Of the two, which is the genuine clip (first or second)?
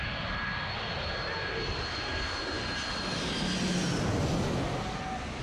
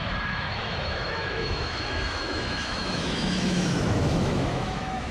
first